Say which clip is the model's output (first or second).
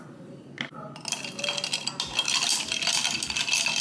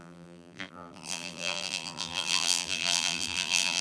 second